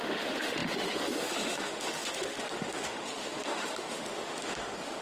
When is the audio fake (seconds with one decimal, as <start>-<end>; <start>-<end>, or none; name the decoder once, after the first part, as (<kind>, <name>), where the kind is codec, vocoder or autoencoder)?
0.0-5.0 (autoencoder, DAC-VAE)